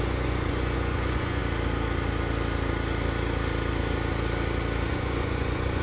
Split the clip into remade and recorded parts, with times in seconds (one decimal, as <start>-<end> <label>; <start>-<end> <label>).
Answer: 0.0-1.4 remade; 1.4-4.9 recorded; 4.9-5.8 remade